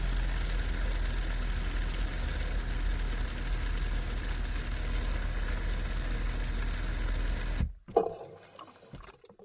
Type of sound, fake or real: real